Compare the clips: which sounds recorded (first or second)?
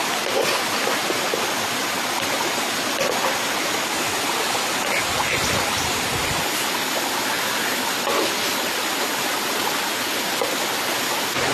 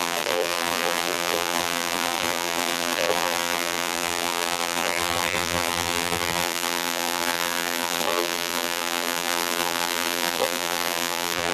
first